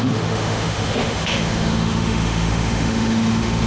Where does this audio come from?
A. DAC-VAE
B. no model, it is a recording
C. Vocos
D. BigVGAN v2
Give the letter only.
A